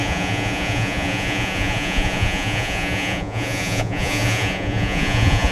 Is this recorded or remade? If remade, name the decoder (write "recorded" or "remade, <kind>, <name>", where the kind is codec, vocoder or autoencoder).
remade, vocoder, Vocos